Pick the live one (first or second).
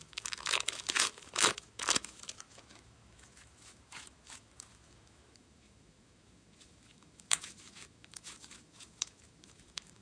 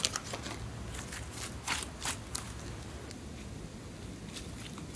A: second